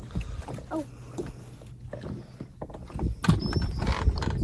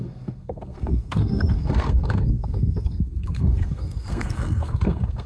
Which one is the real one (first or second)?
first